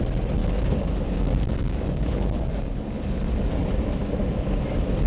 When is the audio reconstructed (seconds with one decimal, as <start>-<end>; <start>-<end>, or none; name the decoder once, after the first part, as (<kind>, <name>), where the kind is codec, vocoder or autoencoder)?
0.4-3.5 (codec, DAC)